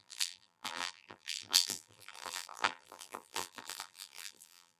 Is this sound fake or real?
fake